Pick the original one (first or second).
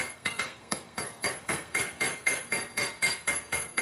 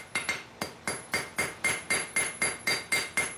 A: second